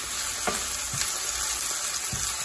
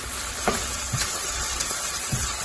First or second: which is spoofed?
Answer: second